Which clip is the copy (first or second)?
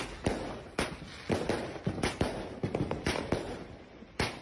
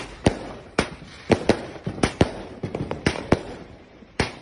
second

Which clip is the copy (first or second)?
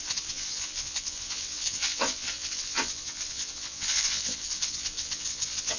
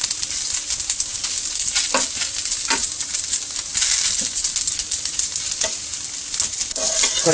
first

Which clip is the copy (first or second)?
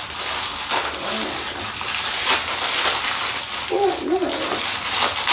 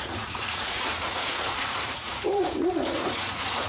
second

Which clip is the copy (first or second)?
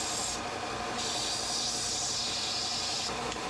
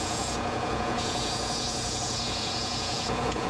second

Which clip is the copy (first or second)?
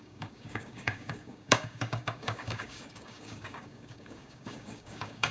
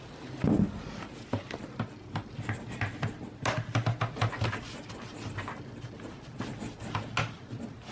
first